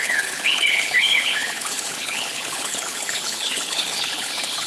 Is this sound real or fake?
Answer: fake